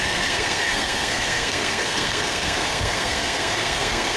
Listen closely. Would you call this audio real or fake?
fake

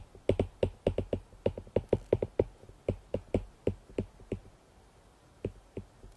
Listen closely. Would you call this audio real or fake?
real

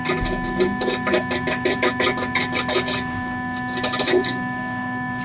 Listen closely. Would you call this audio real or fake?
real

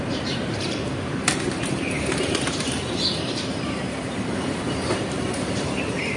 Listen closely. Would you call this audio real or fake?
fake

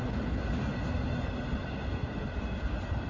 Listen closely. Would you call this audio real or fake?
real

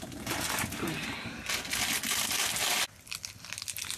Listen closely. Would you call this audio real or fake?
real